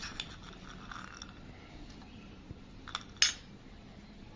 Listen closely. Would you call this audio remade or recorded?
recorded